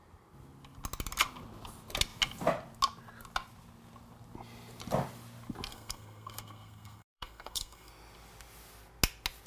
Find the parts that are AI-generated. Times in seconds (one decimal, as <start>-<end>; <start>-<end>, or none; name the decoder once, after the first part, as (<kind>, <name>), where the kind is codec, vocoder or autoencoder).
5.7-7.9 (codec, SNAC)